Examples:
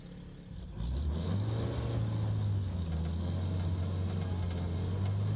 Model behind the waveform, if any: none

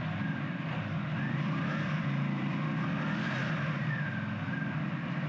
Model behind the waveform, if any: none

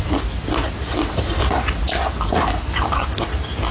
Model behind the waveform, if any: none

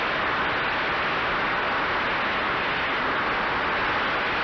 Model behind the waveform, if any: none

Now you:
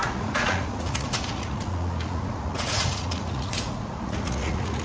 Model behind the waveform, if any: vocoder, Vocos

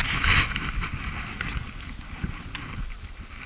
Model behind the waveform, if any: none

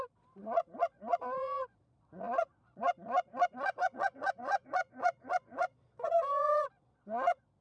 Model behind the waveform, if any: vocoder, Vocos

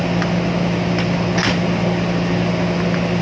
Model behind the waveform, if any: none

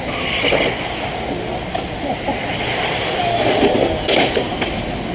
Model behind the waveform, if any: none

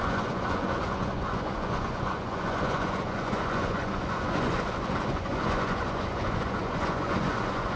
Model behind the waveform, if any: vocoder, Vocos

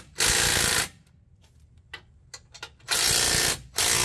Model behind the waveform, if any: none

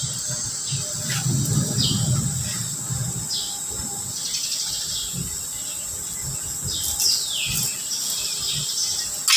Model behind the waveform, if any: none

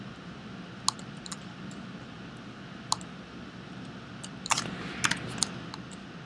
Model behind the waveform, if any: none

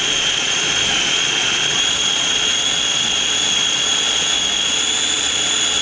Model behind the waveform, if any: vocoder, Vocos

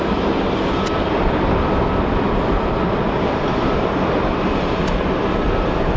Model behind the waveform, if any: none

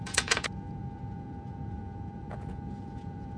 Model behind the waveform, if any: vocoder, Vocos